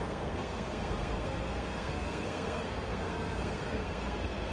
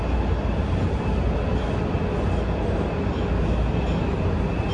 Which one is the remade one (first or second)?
first